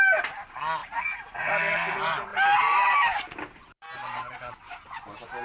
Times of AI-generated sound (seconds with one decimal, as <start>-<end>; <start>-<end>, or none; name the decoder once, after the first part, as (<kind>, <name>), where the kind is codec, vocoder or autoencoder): 0.8-1.5 (vocoder, Vocos)